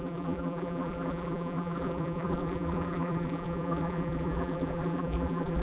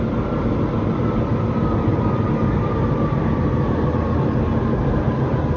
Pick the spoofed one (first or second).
first